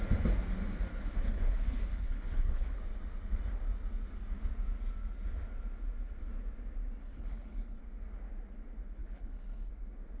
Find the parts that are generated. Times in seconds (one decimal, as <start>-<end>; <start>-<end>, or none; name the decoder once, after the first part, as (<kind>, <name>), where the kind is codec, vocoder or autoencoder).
0.9-2.8 (codec, HILCodec); 7.0-7.8; 9.0-9.7